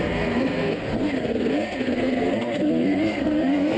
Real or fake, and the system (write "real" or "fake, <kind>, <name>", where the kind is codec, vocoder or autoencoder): fake, codec, SNAC